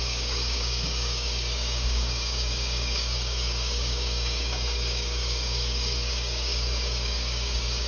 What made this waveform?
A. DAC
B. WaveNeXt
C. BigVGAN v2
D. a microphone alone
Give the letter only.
A